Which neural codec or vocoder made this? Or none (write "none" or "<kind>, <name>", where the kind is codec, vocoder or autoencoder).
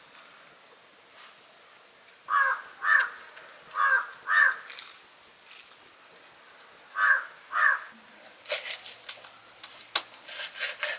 none